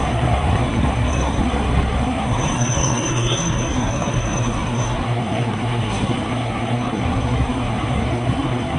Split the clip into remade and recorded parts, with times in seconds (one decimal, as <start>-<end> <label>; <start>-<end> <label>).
0.0-8.8 remade